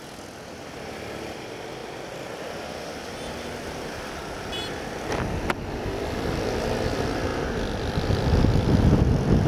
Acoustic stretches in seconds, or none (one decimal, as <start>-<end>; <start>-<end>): 0.0-9.5